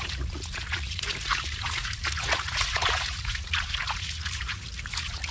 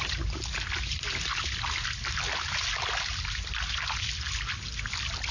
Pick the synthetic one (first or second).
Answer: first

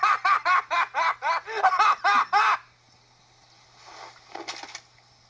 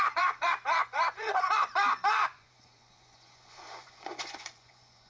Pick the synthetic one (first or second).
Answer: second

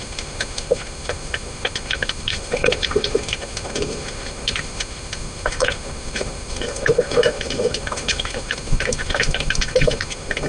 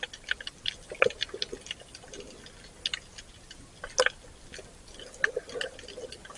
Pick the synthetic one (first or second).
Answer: first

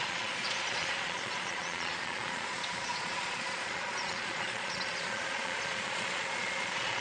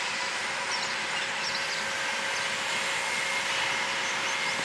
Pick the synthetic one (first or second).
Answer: first